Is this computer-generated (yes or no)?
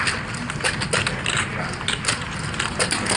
no